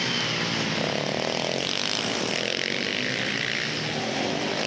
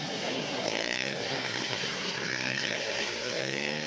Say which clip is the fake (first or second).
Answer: second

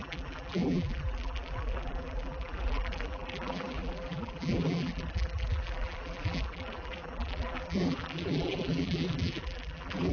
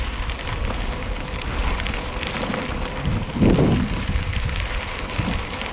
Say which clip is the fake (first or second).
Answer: first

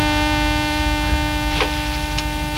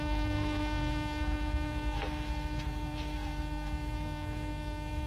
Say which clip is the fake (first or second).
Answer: second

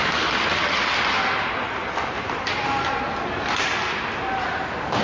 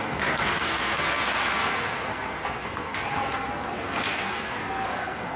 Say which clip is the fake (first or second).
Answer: second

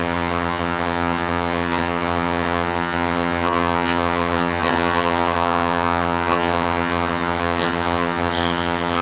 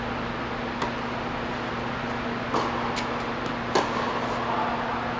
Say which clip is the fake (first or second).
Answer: first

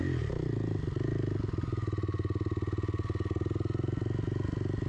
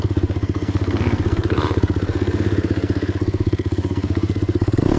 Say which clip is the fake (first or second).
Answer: second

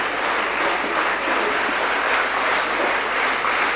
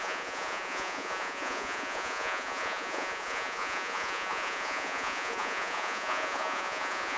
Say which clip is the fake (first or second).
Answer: second